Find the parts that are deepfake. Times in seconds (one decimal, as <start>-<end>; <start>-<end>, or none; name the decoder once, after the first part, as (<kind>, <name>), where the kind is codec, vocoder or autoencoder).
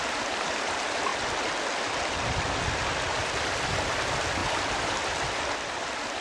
0.0-1.1 (vocoder, BigVGAN v2); 2.6-6.2